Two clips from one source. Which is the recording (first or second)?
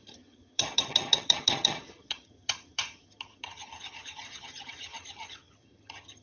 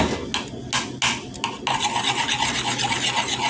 second